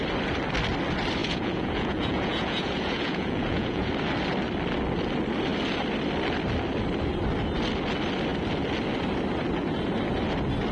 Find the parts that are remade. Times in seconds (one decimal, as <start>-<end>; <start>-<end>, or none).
1.2-3.9